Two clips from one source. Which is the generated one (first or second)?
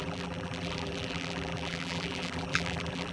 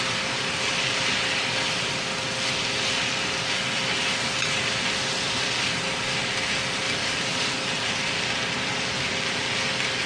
first